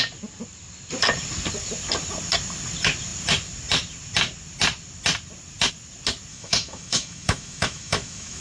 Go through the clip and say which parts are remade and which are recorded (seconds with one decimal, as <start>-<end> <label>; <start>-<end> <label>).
0.0-6.3 recorded; 6.3-8.4 remade